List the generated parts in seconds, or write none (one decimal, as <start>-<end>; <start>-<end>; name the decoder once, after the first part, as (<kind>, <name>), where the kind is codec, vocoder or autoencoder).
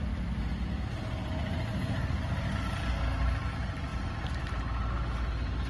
none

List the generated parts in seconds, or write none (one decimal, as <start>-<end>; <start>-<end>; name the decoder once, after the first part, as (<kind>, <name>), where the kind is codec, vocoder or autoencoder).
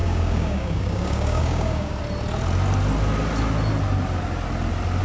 0.0-1.9 (codec, DAC)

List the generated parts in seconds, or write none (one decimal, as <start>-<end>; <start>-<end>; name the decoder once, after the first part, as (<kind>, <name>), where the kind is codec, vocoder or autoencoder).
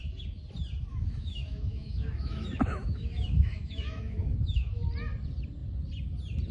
0.9-4.8 (autoencoder, DAC-VAE)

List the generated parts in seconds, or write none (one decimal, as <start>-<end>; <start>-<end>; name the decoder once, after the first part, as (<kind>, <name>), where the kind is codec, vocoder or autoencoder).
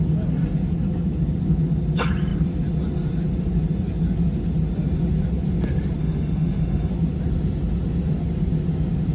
6.0-6.9 (autoencoder, DAC-VAE)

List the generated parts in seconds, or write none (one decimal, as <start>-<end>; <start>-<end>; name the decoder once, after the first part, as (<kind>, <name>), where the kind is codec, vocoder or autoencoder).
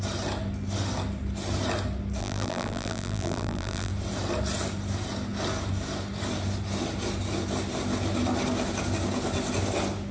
2.2-3.9 (vocoder, BigVGAN v2)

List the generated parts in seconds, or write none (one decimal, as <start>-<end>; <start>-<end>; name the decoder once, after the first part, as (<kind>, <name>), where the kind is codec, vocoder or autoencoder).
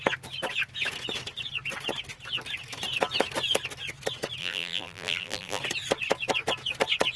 4.4-5.6 (vocoder, BigVGAN v2)